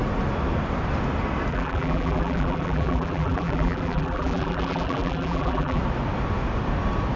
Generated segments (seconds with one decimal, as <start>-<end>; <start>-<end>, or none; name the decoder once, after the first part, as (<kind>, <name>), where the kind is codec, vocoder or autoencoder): 1.5-5.8 (vocoder, BigVGAN v2)